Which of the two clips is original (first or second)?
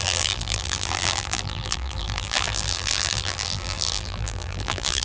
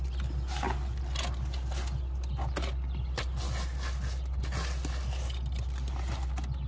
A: second